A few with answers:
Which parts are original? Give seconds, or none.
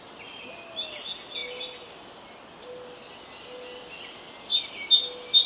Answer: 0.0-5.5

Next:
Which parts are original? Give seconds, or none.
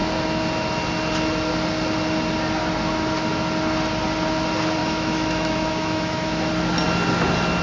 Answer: 0.0-4.8; 6.5-7.6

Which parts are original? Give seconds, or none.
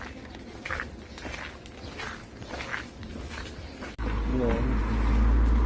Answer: 0.0-5.7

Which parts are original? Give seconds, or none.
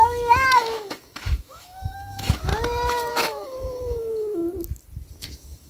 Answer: 2.5-3.1; 4.4-5.2